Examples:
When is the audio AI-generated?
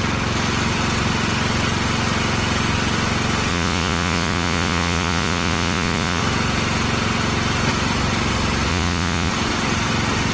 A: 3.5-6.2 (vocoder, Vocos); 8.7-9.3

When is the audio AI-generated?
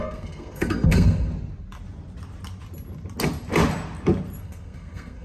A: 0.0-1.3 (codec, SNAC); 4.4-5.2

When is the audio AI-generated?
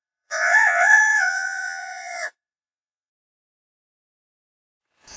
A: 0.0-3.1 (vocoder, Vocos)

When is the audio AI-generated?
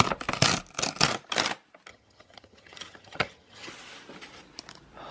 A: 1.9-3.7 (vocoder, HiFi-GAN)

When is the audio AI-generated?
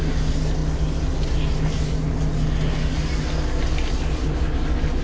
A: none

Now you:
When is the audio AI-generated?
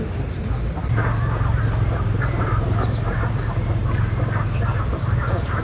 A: none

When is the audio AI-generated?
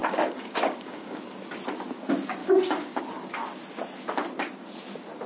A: 0.0-1.2 (codec, DAC); 2.4-3.0